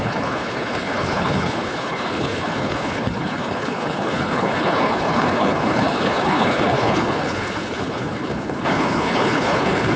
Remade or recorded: remade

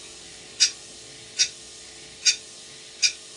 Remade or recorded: recorded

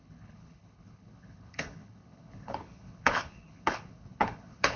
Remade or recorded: remade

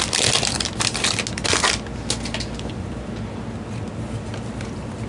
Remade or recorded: recorded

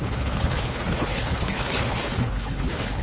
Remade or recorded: remade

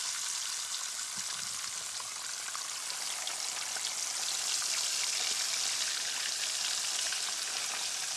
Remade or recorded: recorded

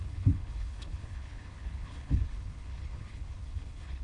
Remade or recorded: remade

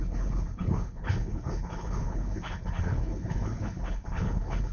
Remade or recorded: remade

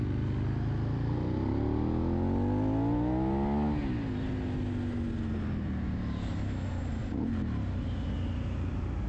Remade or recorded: recorded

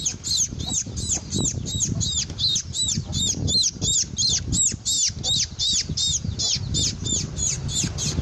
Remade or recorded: recorded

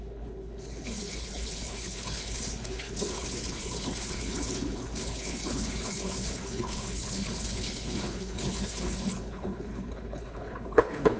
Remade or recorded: remade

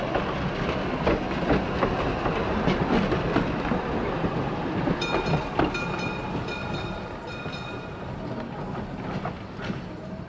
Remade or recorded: recorded